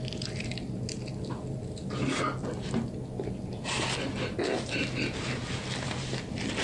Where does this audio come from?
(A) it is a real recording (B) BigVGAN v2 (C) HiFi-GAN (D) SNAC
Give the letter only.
A